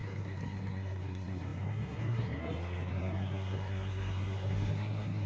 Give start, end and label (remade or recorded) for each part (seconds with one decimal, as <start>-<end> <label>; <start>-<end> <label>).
0.0-5.3 remade